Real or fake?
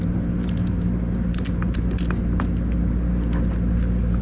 real